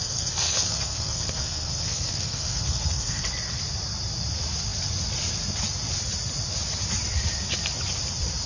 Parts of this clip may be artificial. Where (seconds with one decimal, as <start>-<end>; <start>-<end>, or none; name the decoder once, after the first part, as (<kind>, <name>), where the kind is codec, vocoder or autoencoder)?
0.0-3.2 (codec, SNAC)